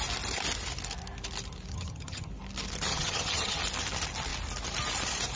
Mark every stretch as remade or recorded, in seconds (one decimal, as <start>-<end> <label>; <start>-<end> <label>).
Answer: 0.0-1.7 recorded; 1.7-2.3 remade; 2.3-2.9 recorded; 2.9-3.6 remade; 3.6-5.4 recorded